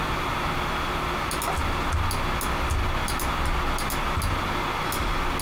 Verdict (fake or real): real